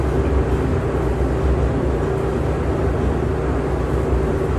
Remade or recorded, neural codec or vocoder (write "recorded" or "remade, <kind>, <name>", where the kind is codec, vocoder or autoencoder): recorded